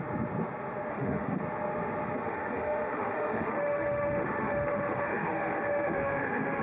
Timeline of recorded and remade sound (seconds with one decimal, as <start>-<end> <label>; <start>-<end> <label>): 0.0-0.9 recorded; 0.9-1.4 remade; 1.4-2.2 recorded; 2.2-6.6 remade